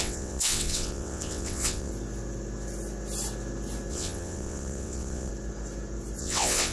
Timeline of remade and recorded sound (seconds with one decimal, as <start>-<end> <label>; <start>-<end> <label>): 0.0-1.9 remade; 1.9-3.9 recorded; 3.9-5.3 remade; 5.3-6.2 recorded; 6.2-6.7 remade